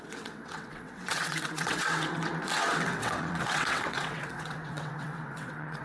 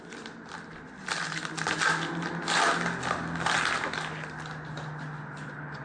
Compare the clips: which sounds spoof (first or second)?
first